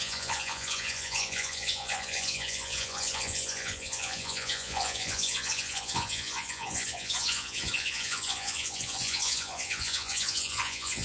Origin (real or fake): fake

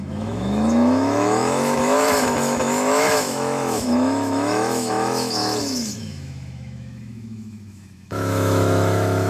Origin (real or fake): fake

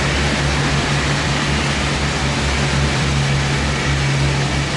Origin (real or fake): fake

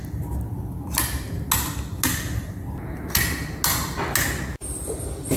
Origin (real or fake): real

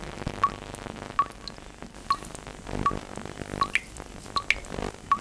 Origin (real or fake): real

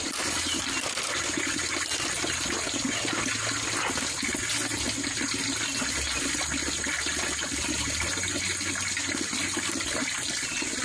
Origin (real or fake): real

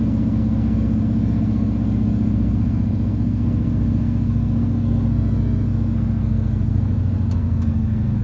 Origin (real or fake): fake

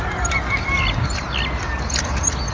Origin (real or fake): real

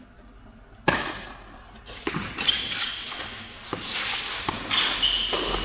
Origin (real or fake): real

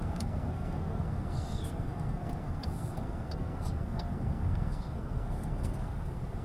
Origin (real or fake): fake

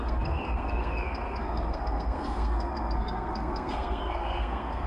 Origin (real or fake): fake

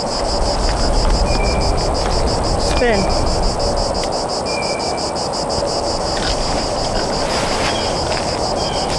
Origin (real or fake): real